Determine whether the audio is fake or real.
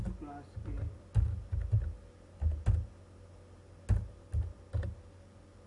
real